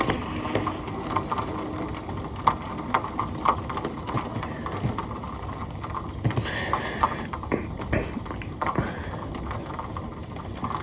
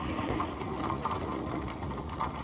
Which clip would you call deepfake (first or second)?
second